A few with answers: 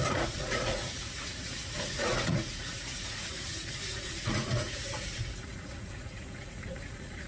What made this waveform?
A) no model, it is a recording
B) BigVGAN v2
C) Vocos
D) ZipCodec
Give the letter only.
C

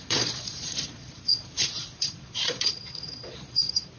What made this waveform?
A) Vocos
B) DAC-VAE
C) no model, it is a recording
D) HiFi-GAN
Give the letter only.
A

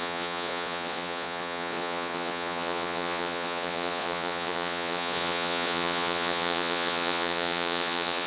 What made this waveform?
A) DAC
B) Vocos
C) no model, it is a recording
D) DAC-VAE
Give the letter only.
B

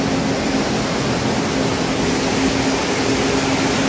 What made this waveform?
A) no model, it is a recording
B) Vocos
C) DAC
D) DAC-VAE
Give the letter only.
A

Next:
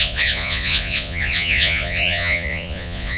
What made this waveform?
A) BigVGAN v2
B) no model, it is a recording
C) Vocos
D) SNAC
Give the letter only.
C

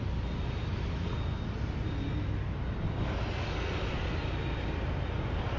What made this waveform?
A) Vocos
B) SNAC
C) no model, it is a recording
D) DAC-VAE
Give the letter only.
C